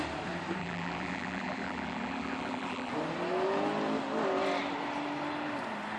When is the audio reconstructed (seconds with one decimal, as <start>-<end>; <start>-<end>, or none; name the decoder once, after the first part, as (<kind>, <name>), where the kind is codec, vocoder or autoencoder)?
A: 0.6-2.9 (vocoder, BigVGAN v2)